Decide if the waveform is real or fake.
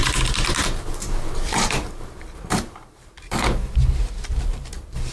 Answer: fake